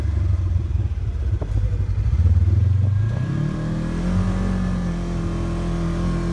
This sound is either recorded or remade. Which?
recorded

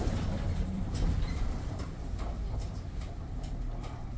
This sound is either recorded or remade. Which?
remade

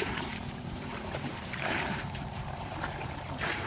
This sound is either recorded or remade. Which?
remade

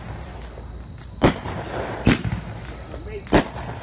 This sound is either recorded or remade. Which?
recorded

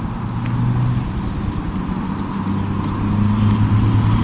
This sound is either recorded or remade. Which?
recorded